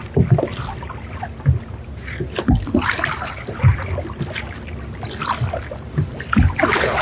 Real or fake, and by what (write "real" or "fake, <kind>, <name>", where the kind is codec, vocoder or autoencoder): real